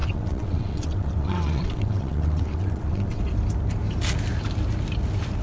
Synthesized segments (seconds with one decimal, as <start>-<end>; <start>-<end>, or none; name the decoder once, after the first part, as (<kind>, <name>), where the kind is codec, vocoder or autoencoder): 0.0-3.2 (vocoder, WaveNeXt)